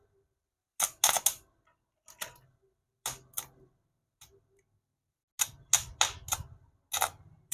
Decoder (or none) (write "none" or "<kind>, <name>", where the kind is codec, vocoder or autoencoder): none